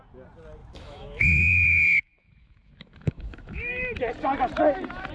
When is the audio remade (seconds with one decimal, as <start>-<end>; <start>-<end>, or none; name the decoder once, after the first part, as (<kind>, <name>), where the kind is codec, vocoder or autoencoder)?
0.6-3.7 (autoencoder, DAC-VAE)

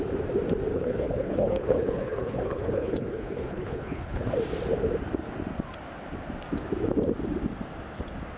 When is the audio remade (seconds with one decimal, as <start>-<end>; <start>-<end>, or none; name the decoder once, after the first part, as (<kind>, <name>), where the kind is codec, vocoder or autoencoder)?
0.7-4.3 (codec, HILCodec)